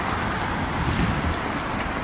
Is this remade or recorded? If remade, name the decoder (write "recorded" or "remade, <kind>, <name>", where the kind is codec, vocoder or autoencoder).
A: recorded